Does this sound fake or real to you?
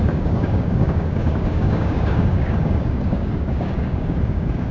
fake